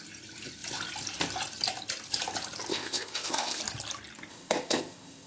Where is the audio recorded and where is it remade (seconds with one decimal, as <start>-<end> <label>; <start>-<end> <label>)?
0.0-2.7 recorded; 2.7-3.6 remade; 3.6-4.3 recorded; 4.3-5.3 remade

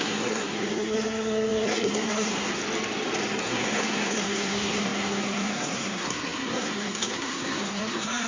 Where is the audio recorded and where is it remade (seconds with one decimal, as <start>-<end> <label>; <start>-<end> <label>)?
0.0-2.6 remade; 2.6-3.4 recorded; 3.4-8.3 remade

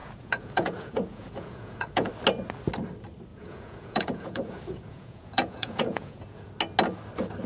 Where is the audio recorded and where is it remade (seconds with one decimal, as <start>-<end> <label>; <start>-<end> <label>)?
0.0-2.1 remade; 2.1-3.3 recorded; 3.3-6.5 remade; 6.5-7.5 recorded

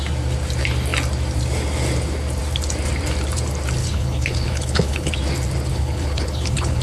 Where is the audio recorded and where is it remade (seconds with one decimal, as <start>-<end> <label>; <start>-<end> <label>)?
0.0-3.8 recorded; 3.8-5.1 remade; 5.1-5.7 recorded; 5.7-6.8 remade